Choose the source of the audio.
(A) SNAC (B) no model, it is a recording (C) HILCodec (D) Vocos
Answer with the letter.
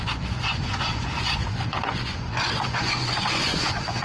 D